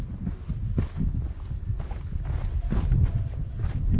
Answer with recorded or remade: recorded